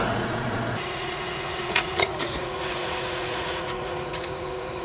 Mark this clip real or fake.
fake